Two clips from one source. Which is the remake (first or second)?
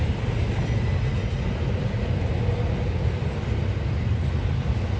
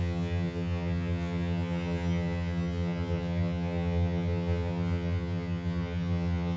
second